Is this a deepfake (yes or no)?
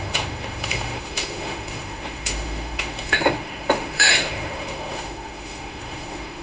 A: yes